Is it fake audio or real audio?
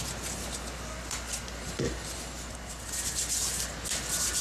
real